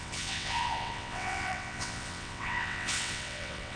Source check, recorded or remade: remade